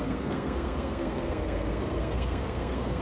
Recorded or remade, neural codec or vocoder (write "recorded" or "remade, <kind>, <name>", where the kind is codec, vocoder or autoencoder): remade, codec, SNAC